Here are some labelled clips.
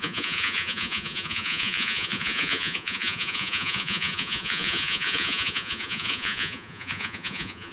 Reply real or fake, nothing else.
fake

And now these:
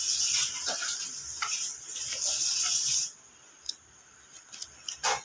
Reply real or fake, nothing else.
real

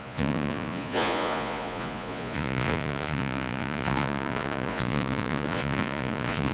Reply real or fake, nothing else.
fake